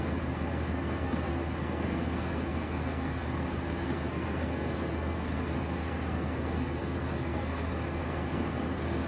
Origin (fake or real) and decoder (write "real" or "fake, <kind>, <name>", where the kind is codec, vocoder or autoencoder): fake, codec, SNAC